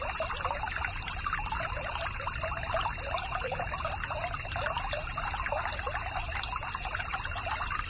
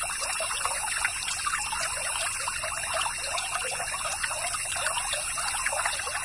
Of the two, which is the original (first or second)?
first